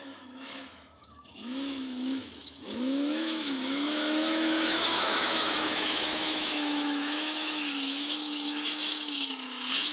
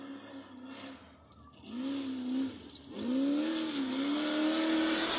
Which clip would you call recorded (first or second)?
second